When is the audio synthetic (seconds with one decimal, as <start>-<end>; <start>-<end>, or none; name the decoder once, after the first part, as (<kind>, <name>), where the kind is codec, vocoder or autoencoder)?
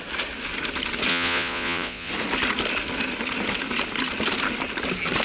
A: 1.1-2.1 (vocoder, Vocos)